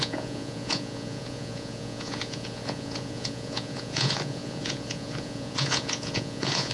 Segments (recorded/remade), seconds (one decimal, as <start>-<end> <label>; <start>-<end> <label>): 0.0-6.7 remade